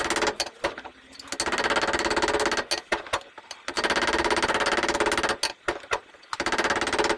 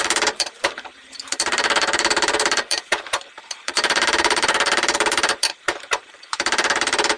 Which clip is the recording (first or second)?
first